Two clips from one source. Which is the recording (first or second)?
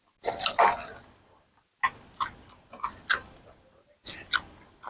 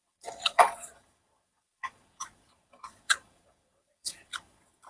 first